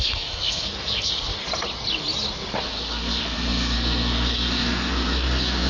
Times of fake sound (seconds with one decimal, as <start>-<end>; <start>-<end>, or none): 0.0-1.3; 2.6-5.7